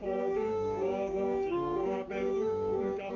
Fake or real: fake